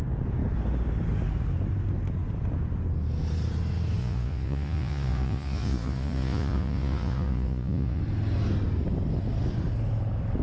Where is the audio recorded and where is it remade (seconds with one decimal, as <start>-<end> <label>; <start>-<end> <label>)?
0.0-4.0 recorded; 4.0-8.0 remade; 8.0-10.4 recorded